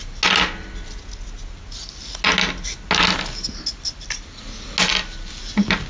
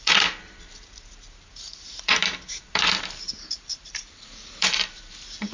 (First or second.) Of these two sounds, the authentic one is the first